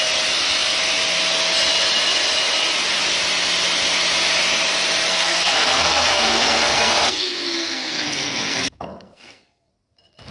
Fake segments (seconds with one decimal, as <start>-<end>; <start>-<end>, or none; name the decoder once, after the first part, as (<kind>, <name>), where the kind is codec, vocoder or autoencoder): 5.1-9.7 (codec, SNAC)

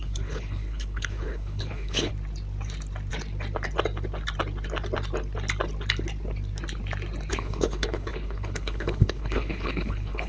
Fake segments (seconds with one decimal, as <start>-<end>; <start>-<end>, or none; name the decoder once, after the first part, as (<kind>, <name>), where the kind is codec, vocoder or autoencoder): 0.0-2.1 (codec, HILCodec); 7.3-10.3

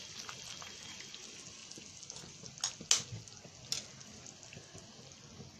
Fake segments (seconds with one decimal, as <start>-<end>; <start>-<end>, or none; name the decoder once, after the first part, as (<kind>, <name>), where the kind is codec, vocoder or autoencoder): none